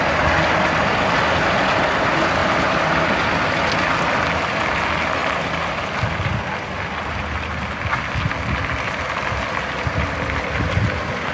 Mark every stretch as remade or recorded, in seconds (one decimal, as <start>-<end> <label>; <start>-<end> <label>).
0.0-2.4 recorded; 2.4-3.0 remade; 3.0-11.3 recorded